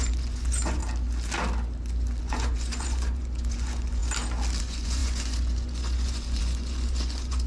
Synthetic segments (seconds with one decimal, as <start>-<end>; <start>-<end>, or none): 0.0-0.8; 2.2-4.0; 4.6-7.5